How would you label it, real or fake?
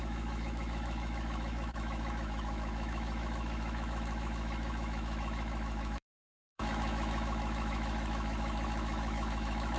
fake